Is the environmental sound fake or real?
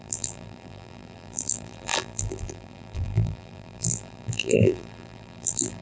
fake